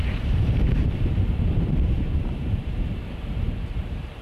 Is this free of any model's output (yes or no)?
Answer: no